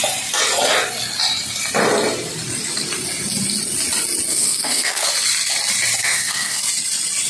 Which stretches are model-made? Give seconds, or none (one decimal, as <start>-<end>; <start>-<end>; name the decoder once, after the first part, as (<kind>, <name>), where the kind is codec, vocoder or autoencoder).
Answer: 4.3-5.1 (codec, SNAC); 6.0-6.6